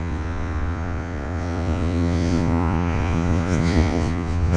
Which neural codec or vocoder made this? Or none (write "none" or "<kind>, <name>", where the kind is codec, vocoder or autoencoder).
vocoder, Vocos